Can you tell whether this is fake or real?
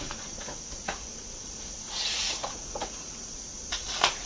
fake